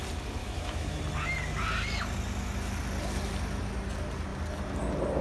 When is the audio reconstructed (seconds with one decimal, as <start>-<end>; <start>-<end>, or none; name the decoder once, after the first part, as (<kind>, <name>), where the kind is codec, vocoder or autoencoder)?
0.4-1.0 (autoencoder, DAC-VAE)